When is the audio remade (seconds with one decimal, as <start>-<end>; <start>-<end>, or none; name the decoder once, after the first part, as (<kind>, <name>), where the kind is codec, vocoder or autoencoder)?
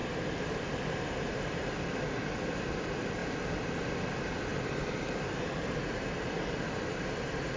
0.0-1.7 (vocoder, BigVGAN v2); 4.5-5.8